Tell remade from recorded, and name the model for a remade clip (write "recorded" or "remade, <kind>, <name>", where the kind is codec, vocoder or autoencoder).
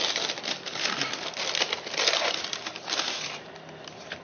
recorded